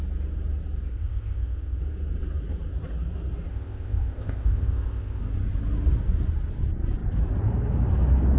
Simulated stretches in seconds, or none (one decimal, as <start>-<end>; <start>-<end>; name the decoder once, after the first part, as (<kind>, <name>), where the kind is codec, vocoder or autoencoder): 0.9-1.8 (codec, ZipCodec); 3.5-5.2